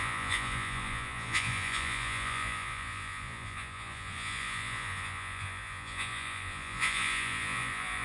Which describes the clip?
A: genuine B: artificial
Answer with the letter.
B